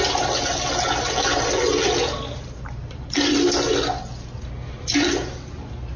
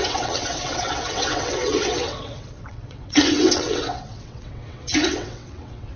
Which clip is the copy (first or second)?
second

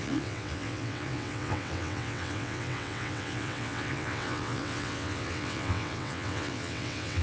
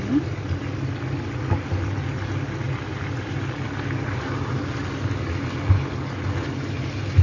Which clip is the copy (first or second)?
first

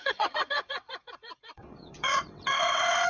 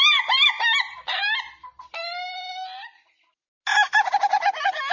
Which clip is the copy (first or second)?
first